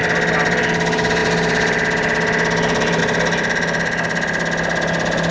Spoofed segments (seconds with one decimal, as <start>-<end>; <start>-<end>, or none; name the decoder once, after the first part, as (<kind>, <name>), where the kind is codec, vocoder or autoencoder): none

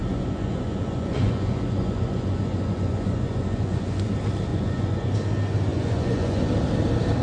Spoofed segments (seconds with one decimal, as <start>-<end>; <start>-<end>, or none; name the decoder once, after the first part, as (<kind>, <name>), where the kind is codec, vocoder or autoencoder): 0.0-4.1 (vocoder, Vocos); 4.5-5.1; 5.7-6.5

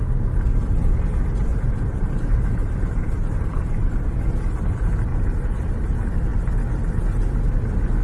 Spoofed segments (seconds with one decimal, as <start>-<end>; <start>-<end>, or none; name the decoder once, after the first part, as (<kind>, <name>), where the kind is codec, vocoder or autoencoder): 1.5-4.3 (vocoder, BigVGAN v2); 5.1-5.7

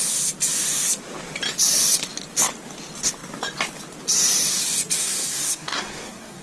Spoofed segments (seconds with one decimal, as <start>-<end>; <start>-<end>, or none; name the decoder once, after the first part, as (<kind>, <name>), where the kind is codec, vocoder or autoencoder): 5.0-6.4 (codec, SNAC)

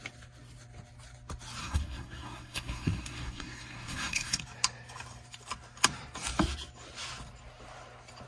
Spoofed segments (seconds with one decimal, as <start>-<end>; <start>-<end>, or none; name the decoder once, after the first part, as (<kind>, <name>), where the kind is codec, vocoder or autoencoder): 1.6-4.4 (codec, SNAC)

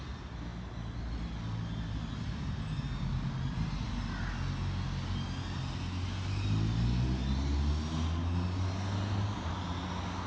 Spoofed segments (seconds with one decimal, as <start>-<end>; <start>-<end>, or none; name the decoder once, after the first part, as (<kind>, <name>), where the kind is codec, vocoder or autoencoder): none

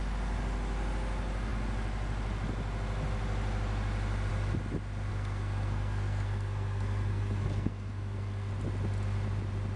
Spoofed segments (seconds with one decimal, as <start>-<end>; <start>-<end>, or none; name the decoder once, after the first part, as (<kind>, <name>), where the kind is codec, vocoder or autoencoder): 5.1-8.5 (codec, SNAC)